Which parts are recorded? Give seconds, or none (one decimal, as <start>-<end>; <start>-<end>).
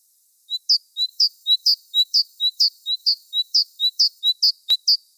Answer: 0.0-1.1; 4.2-5.2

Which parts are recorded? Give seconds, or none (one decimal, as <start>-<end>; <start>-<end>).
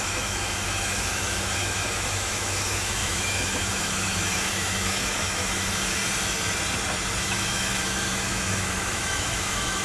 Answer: 6.0-7.2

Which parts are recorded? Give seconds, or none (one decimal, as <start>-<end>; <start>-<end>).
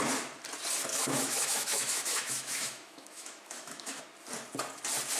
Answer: 0.0-0.9; 4.0-5.2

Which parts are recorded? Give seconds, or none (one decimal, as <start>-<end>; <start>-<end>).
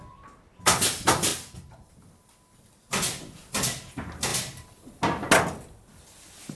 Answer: 0.0-6.5